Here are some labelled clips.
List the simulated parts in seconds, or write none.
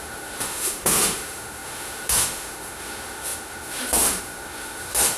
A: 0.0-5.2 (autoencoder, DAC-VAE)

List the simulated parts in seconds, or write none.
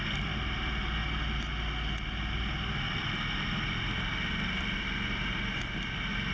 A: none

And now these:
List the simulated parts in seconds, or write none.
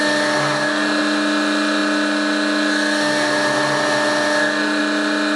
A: none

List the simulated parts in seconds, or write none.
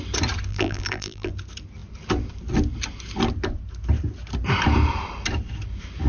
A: 0.5-1.3 (vocoder, BigVGAN v2)